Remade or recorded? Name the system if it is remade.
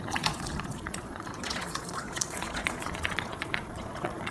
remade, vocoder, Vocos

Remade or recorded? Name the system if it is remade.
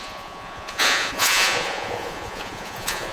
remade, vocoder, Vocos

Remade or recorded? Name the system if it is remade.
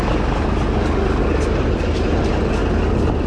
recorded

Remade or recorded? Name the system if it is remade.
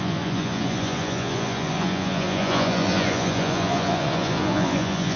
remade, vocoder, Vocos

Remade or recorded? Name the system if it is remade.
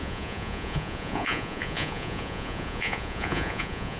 remade, vocoder, Vocos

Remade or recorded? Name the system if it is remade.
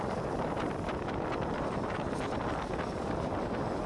recorded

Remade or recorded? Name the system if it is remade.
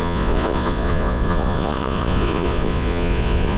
remade, vocoder, Vocos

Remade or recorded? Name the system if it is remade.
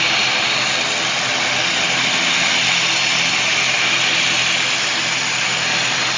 recorded